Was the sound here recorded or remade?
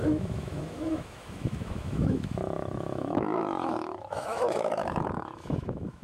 remade